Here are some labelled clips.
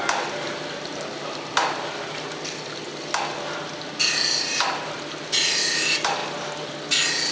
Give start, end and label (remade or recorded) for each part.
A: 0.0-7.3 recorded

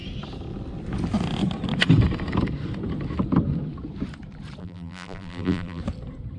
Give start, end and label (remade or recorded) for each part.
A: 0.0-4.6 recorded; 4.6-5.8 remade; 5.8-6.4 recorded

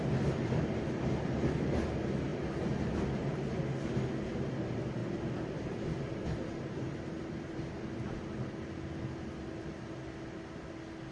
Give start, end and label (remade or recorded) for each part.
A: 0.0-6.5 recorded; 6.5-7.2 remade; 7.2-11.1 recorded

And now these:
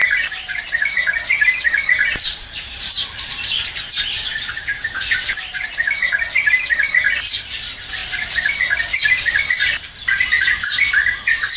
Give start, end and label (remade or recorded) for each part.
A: 0.0-3.7 remade; 3.7-4.3 recorded; 4.3-7.1 remade; 7.1-11.6 recorded

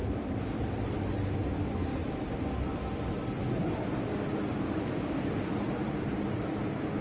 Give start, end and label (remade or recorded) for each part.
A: 0.0-0.6 remade; 0.6-1.9 recorded; 1.9-5.9 remade; 5.9-7.0 recorded

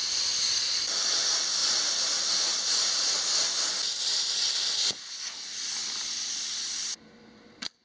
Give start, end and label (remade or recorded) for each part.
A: 0.0-0.9 remade; 0.9-1.6 recorded; 1.6-2.3 remade; 2.3-6.0 recorded; 6.0-7.8 remade

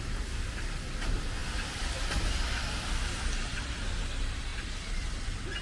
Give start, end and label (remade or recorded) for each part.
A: 0.0-5.6 recorded